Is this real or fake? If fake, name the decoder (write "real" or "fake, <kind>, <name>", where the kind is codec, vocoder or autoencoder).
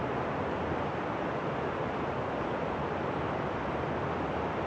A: real